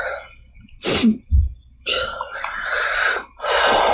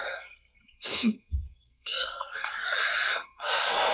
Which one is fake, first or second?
second